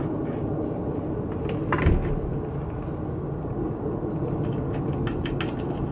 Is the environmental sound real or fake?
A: real